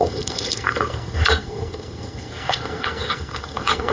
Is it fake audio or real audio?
fake